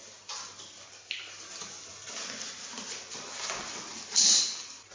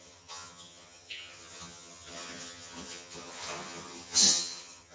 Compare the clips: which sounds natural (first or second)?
first